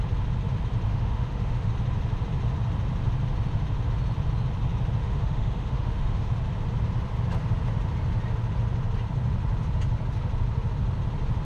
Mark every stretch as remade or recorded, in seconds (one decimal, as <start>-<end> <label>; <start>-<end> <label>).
0.0-0.9 recorded; 0.9-1.7 remade; 1.7-5.0 recorded; 5.0-6.3 remade; 6.3-11.4 recorded